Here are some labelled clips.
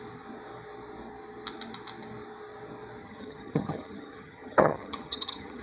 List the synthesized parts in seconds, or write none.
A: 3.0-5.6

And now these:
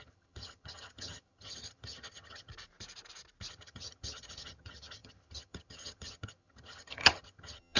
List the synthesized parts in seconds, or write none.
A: 0.0-2.5; 3.5-7.8

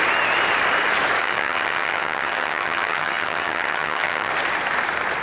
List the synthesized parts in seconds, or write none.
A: 1.2-4.3